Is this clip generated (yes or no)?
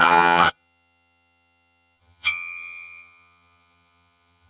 yes